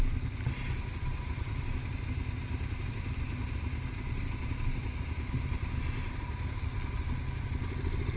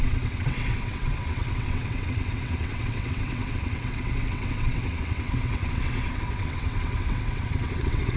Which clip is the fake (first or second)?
second